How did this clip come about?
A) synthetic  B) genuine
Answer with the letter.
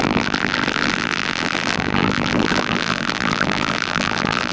A